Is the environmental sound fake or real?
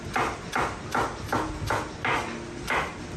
real